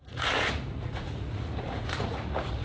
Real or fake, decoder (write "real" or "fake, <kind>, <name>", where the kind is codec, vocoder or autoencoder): fake, vocoder, Vocos